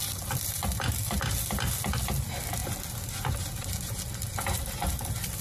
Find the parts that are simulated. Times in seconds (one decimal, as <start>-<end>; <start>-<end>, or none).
none